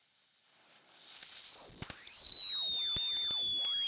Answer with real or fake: real